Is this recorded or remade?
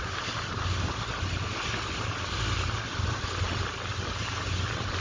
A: recorded